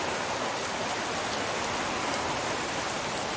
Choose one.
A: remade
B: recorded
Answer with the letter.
B